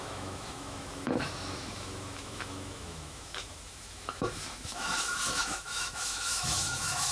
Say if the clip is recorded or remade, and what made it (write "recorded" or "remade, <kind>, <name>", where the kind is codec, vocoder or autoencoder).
remade, autoencoder, DAC-VAE